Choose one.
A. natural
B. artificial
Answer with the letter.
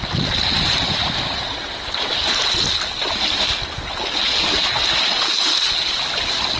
A